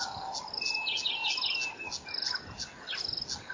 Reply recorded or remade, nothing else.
recorded